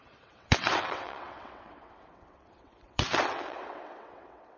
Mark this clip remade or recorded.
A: remade